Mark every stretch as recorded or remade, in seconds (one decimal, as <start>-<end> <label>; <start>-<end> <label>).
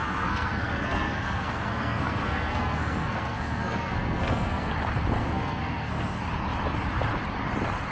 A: 0.0-4.7 remade; 4.7-5.2 recorded; 5.2-6.2 remade; 6.2-7.9 recorded